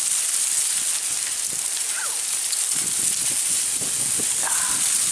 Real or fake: real